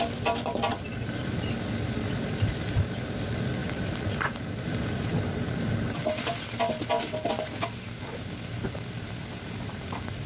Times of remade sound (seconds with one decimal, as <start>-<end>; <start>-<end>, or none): 0.7-1.5; 3.6-6.3